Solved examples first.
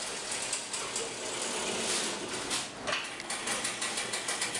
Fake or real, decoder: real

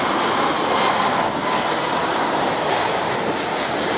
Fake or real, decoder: real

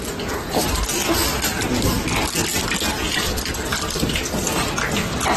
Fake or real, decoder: real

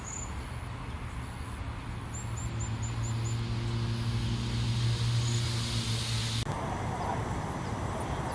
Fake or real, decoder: real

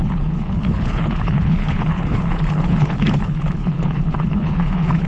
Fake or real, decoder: fake, codec, HILCodec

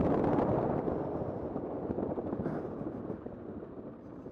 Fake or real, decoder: real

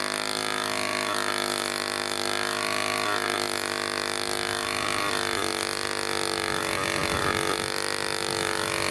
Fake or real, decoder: real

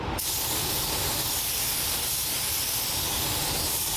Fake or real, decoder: real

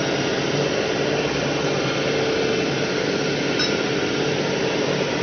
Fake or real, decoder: real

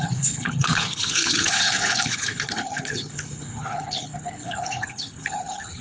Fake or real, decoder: fake, codec, HILCodec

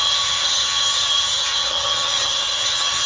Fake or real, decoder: fake, vocoder, HiFi-GAN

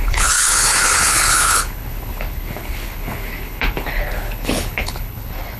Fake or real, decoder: fake, codec, HILCodec